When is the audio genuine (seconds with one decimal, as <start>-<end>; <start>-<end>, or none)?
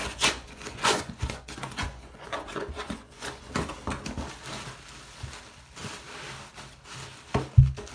3.5-7.9